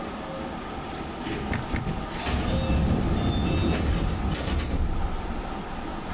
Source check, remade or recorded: recorded